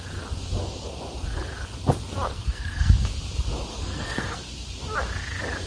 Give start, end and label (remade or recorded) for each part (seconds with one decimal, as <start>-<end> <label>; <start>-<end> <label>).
0.0-2.3 recorded; 2.3-3.1 remade; 3.1-3.7 recorded; 3.7-4.4 remade; 4.4-5.7 recorded